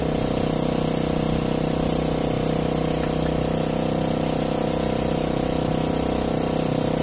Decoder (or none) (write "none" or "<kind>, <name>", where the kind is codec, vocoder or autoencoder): none